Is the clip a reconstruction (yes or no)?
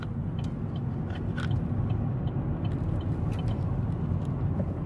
no